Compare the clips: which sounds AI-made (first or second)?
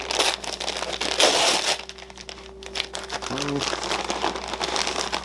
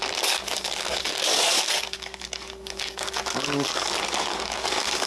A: second